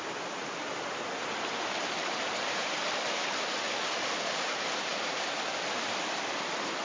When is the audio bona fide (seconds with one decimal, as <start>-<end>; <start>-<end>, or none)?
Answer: 0.0-4.9